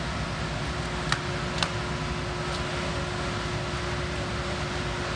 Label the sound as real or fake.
real